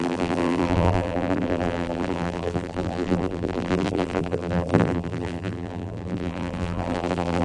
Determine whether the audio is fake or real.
fake